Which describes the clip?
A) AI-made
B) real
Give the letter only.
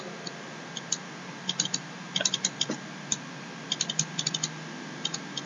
B